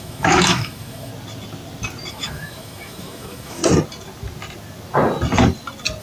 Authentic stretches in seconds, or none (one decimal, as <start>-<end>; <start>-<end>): 1.1-2.1; 3.6-6.0

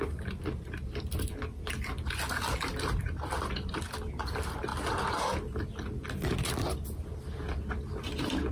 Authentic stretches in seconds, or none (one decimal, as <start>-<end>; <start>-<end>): 0.0-8.5

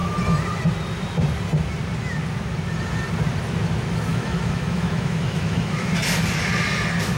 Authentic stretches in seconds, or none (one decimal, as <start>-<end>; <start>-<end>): 0.0-4.1; 5.9-7.2